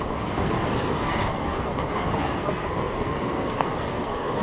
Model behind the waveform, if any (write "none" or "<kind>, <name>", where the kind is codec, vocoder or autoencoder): codec, SNAC